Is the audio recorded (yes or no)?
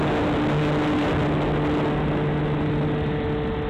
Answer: yes